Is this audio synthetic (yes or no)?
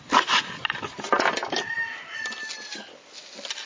no